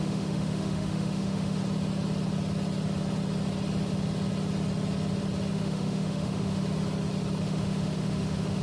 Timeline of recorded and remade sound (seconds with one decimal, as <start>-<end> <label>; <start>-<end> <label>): 0.0-1.6 remade; 1.6-5.5 recorded; 5.5-6.6 remade; 6.6-7.4 recorded; 7.4-8.6 remade